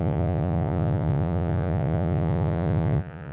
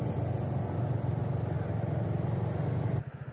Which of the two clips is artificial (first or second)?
first